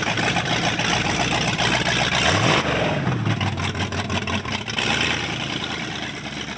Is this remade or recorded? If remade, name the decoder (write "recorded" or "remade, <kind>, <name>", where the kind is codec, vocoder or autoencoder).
recorded